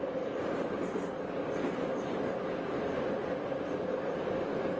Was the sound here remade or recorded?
remade